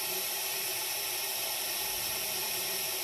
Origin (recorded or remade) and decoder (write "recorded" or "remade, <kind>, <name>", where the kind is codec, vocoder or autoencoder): remade, vocoder, BigVGAN v2